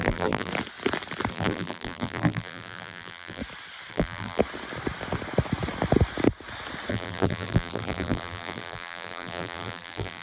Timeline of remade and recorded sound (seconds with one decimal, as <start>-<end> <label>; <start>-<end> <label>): 0.0-0.5 remade; 0.5-1.3 recorded; 1.3-3.4 remade; 3.4-3.9 recorded; 3.9-4.4 remade; 4.4-6.9 recorded; 6.9-10.2 remade

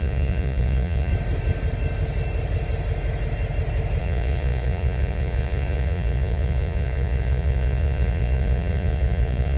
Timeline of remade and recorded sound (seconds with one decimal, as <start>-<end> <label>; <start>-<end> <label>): 0.0-1.1 remade; 1.1-4.0 recorded; 4.0-9.6 remade

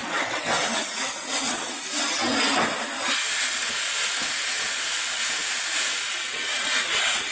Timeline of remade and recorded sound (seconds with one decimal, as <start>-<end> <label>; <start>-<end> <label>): 0.0-1.8 remade; 1.8-7.3 recorded

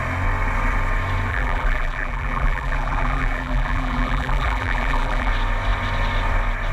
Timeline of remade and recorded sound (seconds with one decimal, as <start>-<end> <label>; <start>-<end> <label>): 0.0-1.3 recorded; 1.3-5.3 remade; 5.3-6.7 recorded

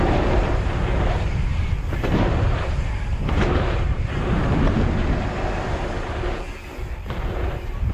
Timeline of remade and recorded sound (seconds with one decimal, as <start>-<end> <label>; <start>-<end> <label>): 0.0-4.3 remade; 4.3-7.5 recorded; 7.5-7.9 remade

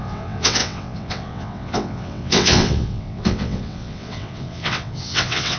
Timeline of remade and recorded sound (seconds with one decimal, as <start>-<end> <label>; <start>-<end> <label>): 0.0-5.6 remade